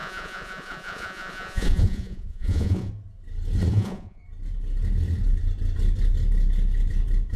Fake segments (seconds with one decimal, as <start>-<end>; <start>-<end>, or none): 0.0-2.9; 3.7-4.2